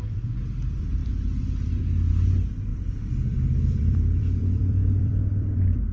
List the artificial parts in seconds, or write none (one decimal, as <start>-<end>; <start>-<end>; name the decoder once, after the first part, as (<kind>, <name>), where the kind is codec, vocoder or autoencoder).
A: 1.0-2.1 (vocoder, BigVGAN v2); 2.7-5.9